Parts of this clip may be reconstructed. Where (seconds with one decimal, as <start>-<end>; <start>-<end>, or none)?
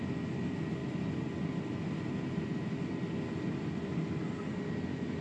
none